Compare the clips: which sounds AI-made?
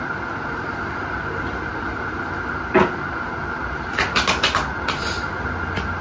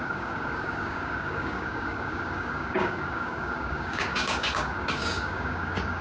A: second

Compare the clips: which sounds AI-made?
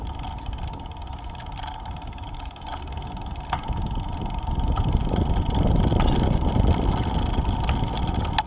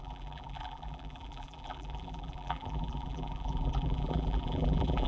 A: second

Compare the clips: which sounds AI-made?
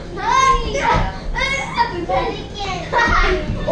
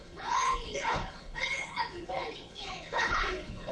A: second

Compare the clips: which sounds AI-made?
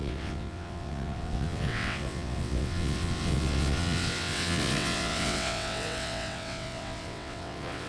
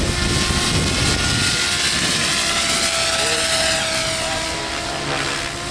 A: first